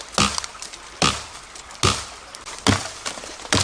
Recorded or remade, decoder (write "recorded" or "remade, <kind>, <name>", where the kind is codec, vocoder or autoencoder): recorded